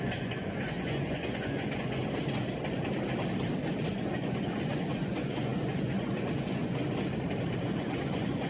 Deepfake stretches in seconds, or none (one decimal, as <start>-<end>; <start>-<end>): 0.0-2.0; 3.9-6.8; 7.6-8.5